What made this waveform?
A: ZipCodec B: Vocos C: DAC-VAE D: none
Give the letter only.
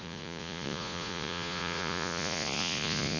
B